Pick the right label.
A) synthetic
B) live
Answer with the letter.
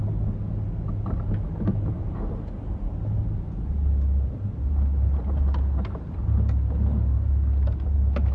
A